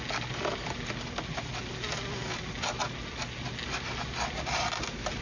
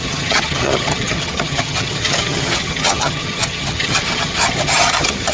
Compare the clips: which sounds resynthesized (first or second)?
second